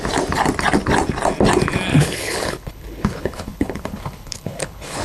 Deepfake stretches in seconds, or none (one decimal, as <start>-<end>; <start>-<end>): 1.9-5.0

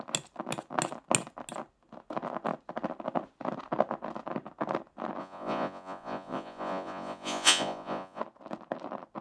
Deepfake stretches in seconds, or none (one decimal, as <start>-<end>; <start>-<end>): 5.2-8.2

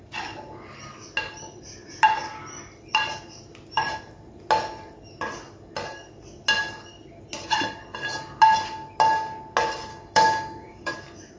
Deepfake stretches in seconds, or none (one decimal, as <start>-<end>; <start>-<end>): 9.9-10.9

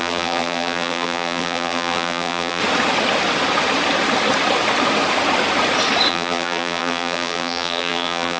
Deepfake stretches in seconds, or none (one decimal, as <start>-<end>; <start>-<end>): 0.0-2.6; 6.1-8.4

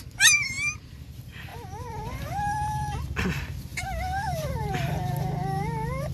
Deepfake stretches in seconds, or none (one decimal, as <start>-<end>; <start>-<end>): 1.5-3.0; 3.7-6.1